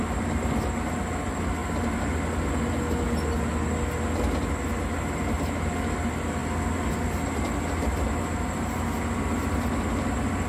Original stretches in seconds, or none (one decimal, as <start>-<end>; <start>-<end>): 0.0-10.5

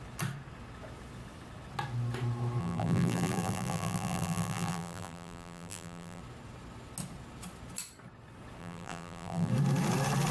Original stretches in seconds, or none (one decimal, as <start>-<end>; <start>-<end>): 0.0-2.6; 6.2-8.6; 9.5-10.3

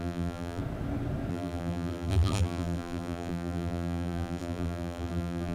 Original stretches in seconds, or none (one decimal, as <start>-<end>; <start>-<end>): 0.6-1.3

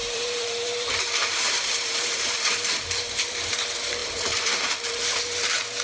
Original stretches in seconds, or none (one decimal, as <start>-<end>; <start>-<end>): none

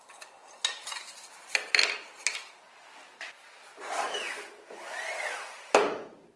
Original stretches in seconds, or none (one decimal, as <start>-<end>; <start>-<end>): 0.0-0.8; 2.9-6.4